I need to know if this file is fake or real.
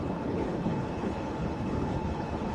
fake